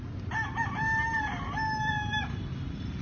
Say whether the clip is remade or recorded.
recorded